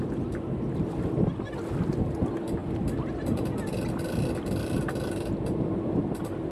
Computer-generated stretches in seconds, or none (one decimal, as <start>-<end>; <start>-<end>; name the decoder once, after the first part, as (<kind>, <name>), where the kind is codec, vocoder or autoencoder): none